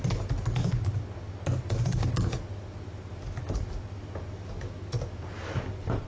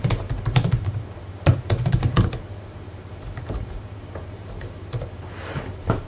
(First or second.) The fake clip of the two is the second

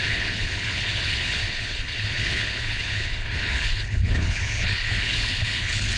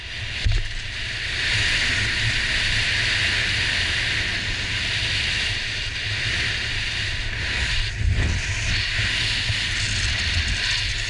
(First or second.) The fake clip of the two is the first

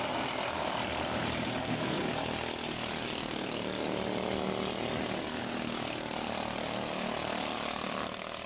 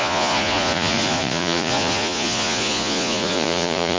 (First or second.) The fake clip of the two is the second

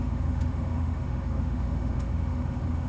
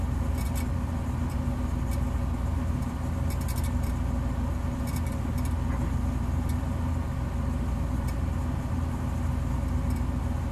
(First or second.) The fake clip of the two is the first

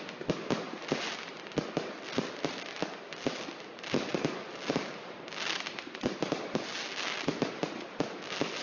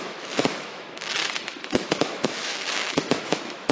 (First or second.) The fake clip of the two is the second